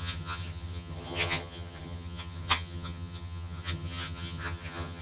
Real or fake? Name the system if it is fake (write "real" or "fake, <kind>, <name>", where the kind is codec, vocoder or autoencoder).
fake, vocoder, HiFi-GAN